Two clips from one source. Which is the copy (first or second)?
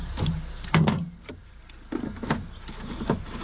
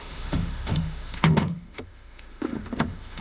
second